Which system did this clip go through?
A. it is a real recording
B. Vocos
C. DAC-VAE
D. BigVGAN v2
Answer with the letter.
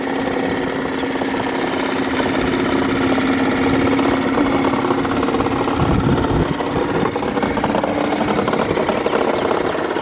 A